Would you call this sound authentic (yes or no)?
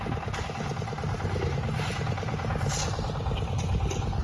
yes